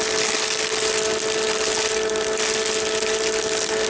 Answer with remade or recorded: recorded